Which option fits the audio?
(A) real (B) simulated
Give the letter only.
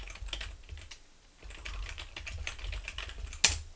A